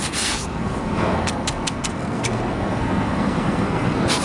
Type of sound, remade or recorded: remade